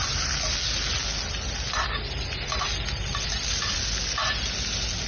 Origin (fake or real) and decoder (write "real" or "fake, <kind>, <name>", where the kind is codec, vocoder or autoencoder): real